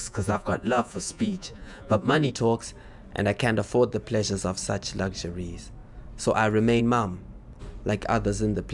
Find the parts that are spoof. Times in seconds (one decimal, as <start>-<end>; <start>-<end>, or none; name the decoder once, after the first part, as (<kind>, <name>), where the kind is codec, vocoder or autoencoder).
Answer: 0.0-2.3 (vocoder, Vocos)